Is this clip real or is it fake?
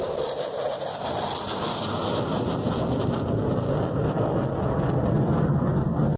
fake